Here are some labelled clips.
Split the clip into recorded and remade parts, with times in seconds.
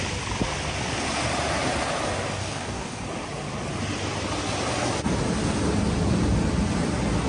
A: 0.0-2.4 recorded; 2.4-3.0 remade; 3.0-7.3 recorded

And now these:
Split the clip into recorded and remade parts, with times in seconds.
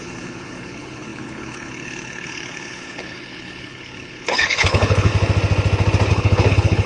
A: 0.0-5.1 remade; 5.1-6.1 recorded; 6.1-6.9 remade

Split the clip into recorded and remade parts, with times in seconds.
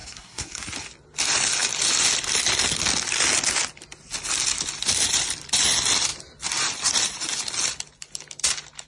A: 0.0-0.6 remade; 0.6-8.9 recorded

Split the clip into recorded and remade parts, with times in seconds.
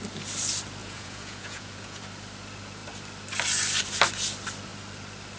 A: 0.0-0.8 recorded; 0.8-2.0 remade; 2.0-5.4 recorded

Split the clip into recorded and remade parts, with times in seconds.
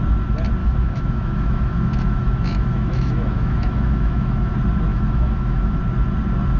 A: 0.0-0.6 recorded; 0.6-4.5 remade; 4.5-4.9 recorded; 4.9-5.8 remade; 5.8-6.6 recorded